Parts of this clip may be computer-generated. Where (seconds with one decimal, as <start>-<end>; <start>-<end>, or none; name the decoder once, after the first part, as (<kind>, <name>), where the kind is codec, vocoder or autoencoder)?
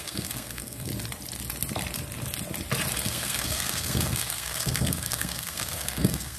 0.0-0.9 (codec, SNAC); 3.0-6.4